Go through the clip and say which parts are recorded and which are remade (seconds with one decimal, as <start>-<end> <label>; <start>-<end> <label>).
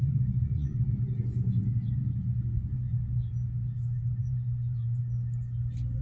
0.0-0.7 remade; 0.7-1.2 recorded; 1.2-1.6 remade; 1.6-2.2 recorded; 2.2-2.9 remade; 2.9-4.2 recorded; 4.2-5.0 remade; 5.0-6.0 recorded